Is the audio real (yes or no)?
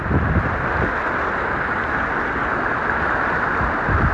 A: yes